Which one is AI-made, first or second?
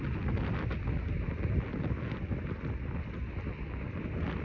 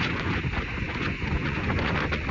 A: second